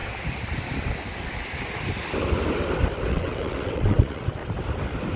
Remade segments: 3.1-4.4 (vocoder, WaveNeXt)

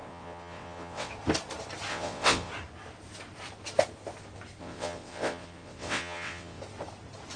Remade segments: 0.0-1.1 (vocoder, WaveNeXt); 1.9-2.5; 4.6-6.6